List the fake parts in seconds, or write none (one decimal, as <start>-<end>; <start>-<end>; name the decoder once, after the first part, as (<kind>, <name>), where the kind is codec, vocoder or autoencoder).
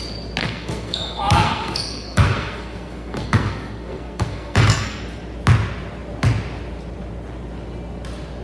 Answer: 0.4-5.0 (codec, SNAC)